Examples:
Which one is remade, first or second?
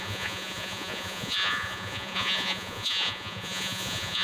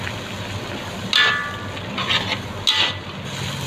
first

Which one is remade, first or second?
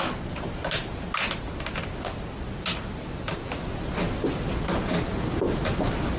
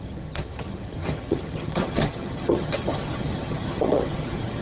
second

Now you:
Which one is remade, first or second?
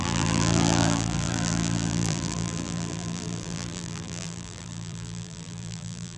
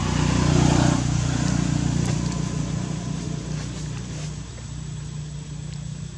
first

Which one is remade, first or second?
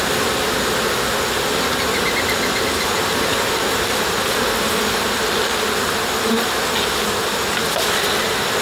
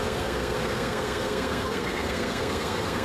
second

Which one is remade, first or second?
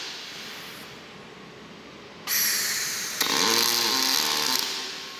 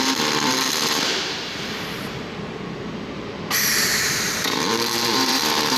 second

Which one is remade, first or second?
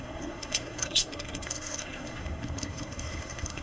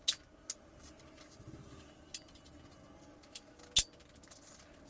first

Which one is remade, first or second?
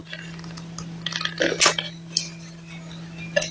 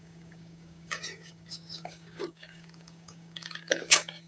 second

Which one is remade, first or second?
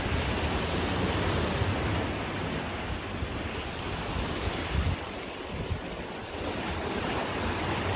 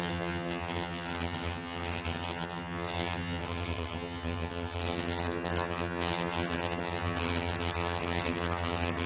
second